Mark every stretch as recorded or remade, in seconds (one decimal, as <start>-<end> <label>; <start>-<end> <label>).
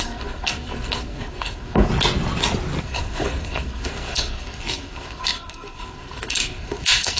0.0-1.9 remade; 1.9-2.8 recorded; 2.8-7.2 remade